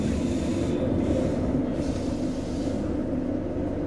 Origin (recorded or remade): recorded